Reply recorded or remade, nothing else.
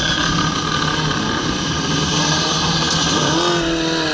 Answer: recorded